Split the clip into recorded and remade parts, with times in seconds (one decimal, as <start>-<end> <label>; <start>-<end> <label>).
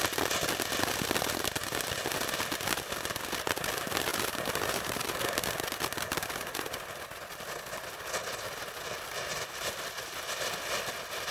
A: 0.0-4.1 recorded; 4.1-5.4 remade; 5.4-11.3 recorded